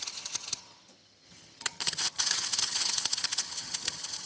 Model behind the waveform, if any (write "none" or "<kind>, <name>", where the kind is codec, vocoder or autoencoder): vocoder, HiFi-GAN